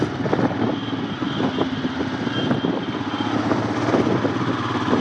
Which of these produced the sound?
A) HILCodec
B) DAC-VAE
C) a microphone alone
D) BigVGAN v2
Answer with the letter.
C